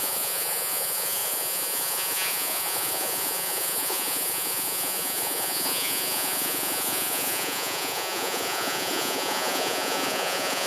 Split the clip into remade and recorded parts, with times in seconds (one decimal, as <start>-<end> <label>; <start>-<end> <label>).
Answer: 0.0-10.7 remade